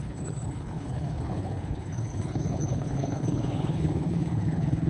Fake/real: fake